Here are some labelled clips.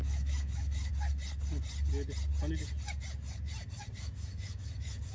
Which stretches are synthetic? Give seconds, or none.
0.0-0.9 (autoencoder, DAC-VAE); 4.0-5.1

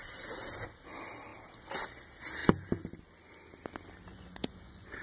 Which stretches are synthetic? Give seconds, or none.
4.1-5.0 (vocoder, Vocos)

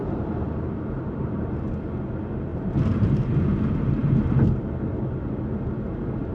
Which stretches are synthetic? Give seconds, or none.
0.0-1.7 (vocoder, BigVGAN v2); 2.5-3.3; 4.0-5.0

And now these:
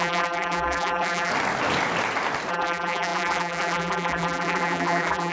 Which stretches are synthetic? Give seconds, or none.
0.0-1.3 (vocoder, BigVGAN v2); 2.5-5.3

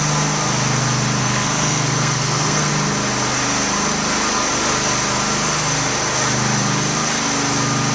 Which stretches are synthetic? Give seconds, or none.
1.2-2.7 (codec, SNAC)

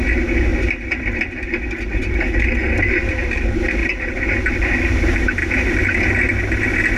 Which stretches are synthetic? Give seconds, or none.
0.5-1.3 (vocoder, BigVGAN v2)

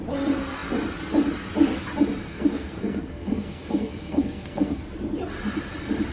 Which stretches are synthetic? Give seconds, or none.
2.3-4.8 (codec, SNAC)

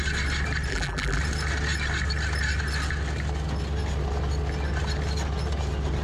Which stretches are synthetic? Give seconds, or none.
0.7-1.2 (vocoder, BigVGAN v2)